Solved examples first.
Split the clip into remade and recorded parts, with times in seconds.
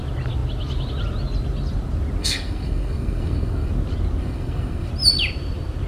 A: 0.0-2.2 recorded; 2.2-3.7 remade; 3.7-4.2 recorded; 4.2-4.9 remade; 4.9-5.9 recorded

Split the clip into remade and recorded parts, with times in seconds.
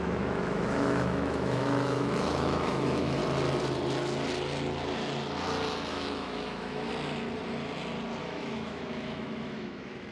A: 0.0-3.2 remade; 3.2-5.9 recorded; 5.9-6.9 remade; 6.9-8.2 recorded; 8.2-10.1 remade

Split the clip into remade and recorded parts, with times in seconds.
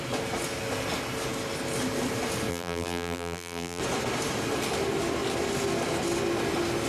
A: 0.0-2.5 recorded; 2.5-3.8 remade; 3.8-6.9 recorded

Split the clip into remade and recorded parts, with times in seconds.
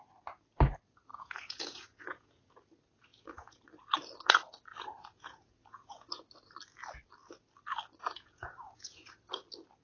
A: 0.0-1.1 recorded; 1.1-2.5 remade; 2.5-3.1 recorded; 3.1-3.6 remade; 3.6-4.7 recorded; 4.7-6.1 remade; 6.1-8.1 recorded; 8.1-9.3 remade; 9.3-9.8 recorded